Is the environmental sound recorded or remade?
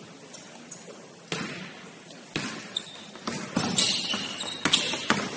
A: recorded